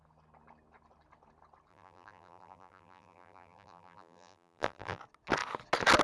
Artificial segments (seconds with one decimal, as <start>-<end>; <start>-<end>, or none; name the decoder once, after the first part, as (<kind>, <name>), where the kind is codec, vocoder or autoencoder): 1.7-5.0 (vocoder, BigVGAN v2)

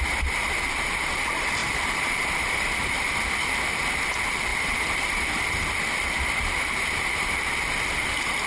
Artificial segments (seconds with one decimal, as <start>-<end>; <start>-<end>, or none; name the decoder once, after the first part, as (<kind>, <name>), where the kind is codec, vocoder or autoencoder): 1.6-3.6 (vocoder, BigVGAN v2); 4.5-7.1

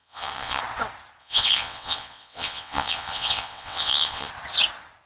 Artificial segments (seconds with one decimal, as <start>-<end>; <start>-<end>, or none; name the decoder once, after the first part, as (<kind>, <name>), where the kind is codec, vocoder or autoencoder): 0.0-0.6 (vocoder, WaveNeXt); 1.2-4.3

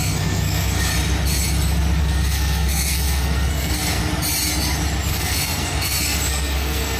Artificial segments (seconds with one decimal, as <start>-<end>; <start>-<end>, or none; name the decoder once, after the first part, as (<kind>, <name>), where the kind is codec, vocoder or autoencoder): 0.0-0.9 (codec, SNAC); 2.0-4.0; 5.1-7.0

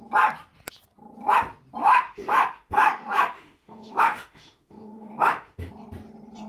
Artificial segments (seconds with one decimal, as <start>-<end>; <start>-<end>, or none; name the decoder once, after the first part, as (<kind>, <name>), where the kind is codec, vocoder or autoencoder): 1.8-5.7 (autoencoder, DAC-VAE)

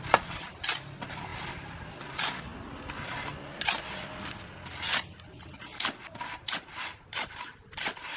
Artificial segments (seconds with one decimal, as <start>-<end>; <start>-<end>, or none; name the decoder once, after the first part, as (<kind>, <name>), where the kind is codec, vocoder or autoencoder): none

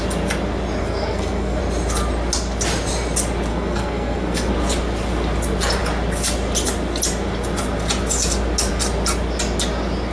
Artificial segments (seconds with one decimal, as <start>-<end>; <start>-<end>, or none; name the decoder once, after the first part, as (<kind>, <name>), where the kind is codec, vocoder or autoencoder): 0.8-1.6 (codec, SNAC); 3.5-4.5